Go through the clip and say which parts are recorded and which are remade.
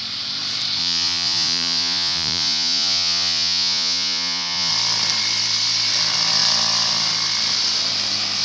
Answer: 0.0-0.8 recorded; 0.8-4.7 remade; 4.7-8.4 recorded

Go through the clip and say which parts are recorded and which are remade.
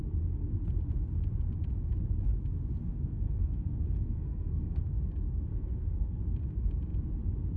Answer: 0.0-2.9 recorded; 2.9-5.0 remade; 5.0-5.5 recorded; 5.5-6.2 remade; 6.2-7.6 recorded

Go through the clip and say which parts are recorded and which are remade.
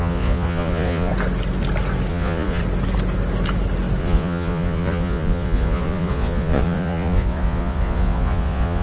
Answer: 0.0-1.1 remade; 1.1-2.1 recorded; 2.1-2.6 remade; 2.6-4.0 recorded; 4.0-8.8 remade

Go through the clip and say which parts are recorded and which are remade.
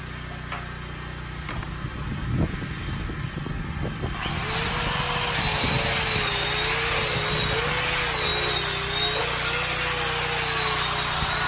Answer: 0.0-11.5 recorded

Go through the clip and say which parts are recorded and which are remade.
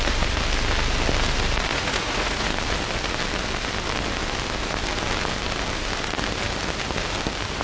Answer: 0.0-1.7 recorded; 1.7-2.5 remade; 2.5-7.6 recorded